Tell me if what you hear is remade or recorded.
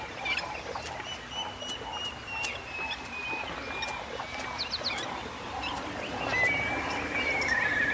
recorded